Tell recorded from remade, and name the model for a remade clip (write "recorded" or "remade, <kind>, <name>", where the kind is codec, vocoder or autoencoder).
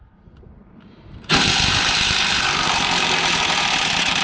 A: remade, vocoder, BigVGAN v2